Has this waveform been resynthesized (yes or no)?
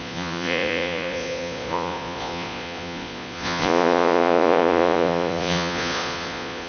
yes